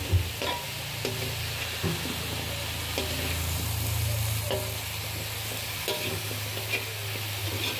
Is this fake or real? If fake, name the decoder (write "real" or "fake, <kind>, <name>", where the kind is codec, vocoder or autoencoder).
real